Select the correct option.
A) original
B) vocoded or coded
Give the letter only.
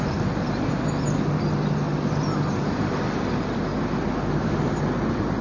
A